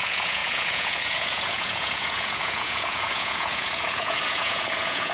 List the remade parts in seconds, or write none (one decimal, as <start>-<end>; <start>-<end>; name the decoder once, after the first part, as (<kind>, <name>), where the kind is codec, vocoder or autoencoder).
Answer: 0.0-5.1 (vocoder, Vocos)